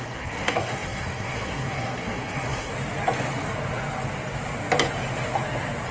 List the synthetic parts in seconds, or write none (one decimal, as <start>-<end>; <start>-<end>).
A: 0.0-2.7

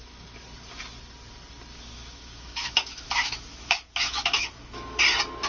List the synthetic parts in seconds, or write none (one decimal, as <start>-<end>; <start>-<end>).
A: 1.7-5.0

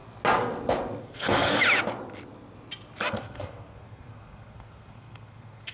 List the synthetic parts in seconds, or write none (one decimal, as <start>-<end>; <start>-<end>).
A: 1.0-1.5; 3.2-5.7

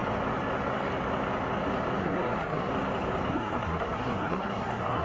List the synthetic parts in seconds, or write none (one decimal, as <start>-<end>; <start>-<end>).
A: 2.0-2.7; 3.3-5.0

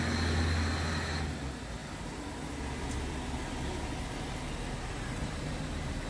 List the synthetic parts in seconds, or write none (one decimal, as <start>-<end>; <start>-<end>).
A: none

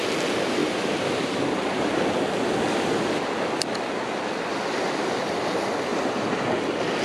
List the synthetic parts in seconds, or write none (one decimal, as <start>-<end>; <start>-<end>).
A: 0.6-1.9; 5.9-6.4

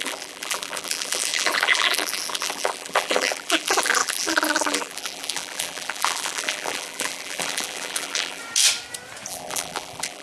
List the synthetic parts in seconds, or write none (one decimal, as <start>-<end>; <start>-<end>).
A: 0.0-8.4; 9.3-10.2